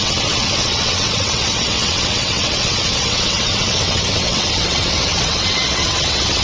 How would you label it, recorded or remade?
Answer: remade